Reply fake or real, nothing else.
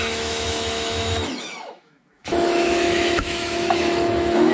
fake